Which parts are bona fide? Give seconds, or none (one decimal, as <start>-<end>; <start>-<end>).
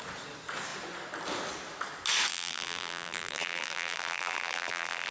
0.0-2.3